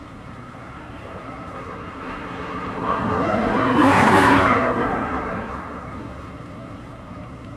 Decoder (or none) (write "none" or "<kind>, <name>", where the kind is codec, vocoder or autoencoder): codec, SNAC